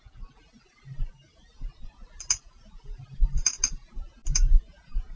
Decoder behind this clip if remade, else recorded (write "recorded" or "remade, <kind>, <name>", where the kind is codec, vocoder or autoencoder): recorded